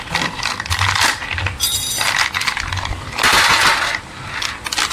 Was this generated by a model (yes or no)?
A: no